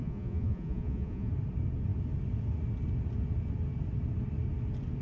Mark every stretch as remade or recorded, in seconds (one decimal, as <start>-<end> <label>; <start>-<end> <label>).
0.0-1.3 remade; 1.3-5.0 recorded